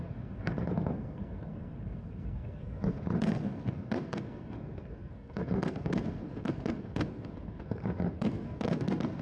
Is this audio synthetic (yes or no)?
yes